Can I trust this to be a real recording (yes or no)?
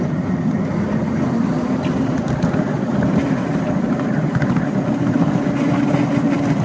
yes